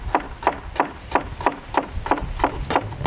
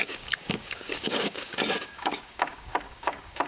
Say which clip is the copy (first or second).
second